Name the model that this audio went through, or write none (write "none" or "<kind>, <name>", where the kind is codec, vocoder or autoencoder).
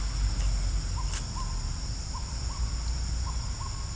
none